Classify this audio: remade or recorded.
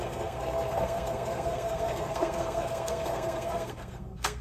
remade